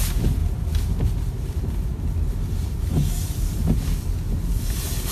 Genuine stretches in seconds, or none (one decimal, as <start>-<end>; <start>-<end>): 0.0-5.1